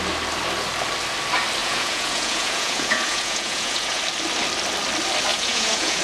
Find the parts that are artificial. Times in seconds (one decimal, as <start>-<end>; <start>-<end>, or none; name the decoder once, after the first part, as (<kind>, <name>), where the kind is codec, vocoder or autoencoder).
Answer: 1.6-4.0 (vocoder, Vocos); 5.3-6.0